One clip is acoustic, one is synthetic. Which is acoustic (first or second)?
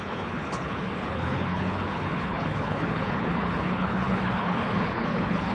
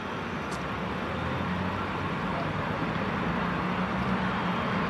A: second